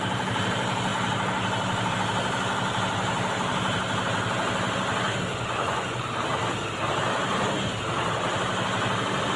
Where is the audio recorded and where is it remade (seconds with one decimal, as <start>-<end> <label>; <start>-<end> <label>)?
0.0-5.3 recorded; 5.3-6.1 remade; 6.1-9.4 recorded